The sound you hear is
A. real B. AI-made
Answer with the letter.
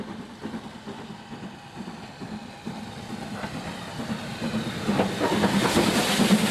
A